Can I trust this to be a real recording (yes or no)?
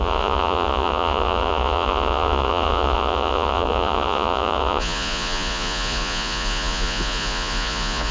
no